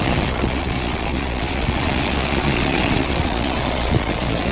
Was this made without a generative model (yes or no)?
no